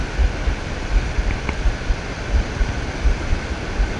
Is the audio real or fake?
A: real